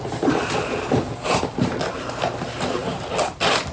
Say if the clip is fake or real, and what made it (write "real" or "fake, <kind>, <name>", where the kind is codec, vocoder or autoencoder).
real